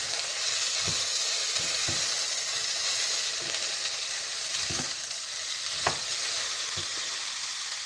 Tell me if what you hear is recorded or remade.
remade